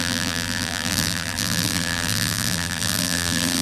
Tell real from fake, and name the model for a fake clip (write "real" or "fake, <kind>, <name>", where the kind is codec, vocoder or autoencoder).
fake, vocoder, BigVGAN v2